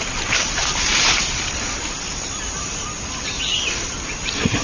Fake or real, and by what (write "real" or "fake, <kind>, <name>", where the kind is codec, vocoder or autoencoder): real